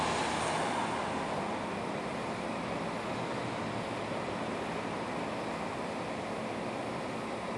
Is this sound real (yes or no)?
yes